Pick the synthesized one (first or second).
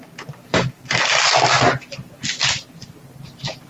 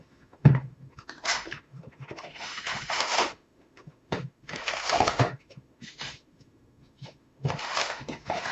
second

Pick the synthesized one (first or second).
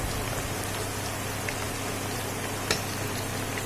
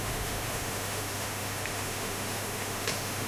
second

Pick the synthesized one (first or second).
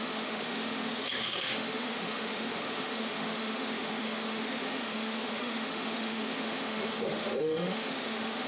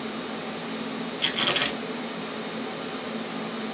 first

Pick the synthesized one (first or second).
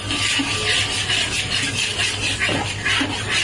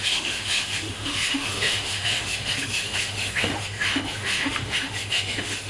second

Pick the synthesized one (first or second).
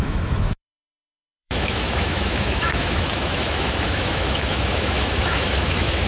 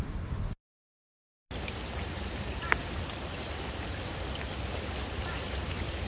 first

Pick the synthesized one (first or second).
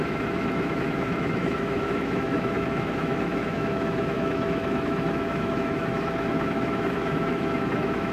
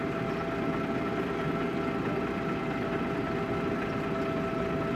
first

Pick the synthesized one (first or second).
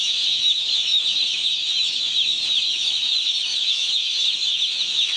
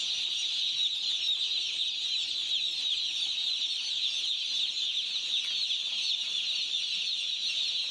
first